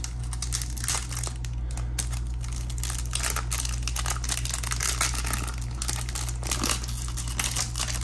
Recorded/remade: recorded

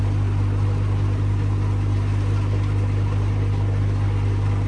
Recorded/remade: recorded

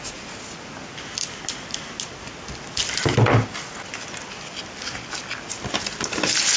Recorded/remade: recorded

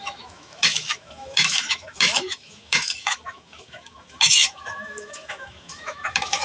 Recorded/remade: remade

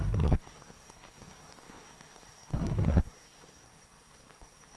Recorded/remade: remade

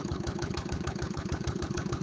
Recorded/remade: remade